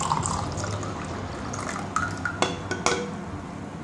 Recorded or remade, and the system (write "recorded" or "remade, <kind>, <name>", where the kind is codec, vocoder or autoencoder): recorded